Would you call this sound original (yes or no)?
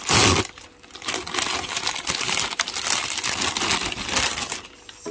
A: yes